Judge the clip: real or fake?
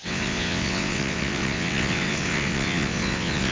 fake